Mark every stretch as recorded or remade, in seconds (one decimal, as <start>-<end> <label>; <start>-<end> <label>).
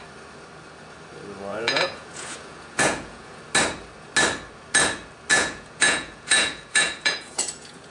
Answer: 0.0-1.5 recorded; 1.5-3.4 remade; 3.4-5.3 recorded; 5.3-7.9 remade